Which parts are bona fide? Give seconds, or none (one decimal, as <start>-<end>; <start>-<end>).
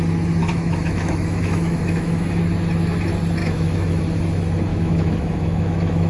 0.0-0.4; 2.4-3.4; 4.0-4.7